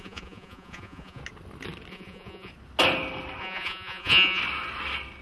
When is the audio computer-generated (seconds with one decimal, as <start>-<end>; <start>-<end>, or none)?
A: 0.0-1.2; 1.9-2.5; 3.4-4.4